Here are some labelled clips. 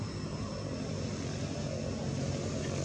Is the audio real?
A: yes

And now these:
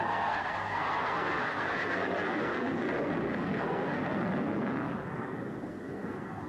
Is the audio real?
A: no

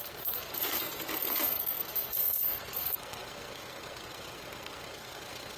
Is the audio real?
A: no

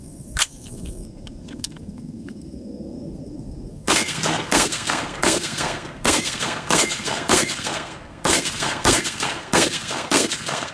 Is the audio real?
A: no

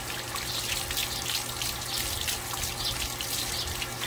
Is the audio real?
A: yes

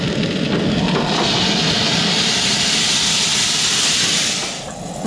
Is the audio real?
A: yes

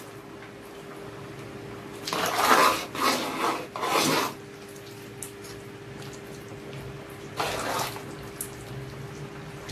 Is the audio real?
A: yes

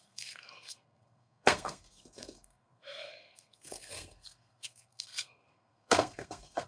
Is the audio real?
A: no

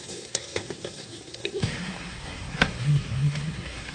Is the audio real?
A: no